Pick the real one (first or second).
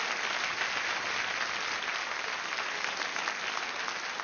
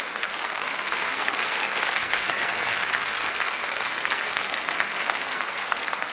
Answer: first